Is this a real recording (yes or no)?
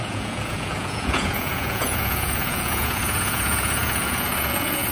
no